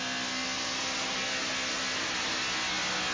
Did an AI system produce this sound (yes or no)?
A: no